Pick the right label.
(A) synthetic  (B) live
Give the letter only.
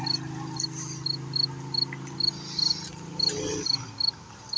B